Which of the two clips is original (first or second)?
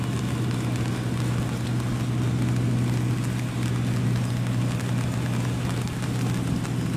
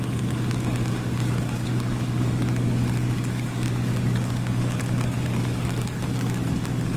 first